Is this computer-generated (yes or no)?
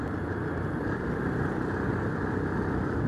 yes